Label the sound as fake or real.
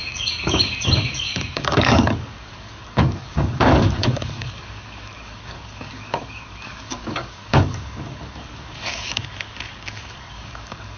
fake